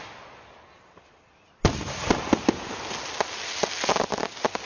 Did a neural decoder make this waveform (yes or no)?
no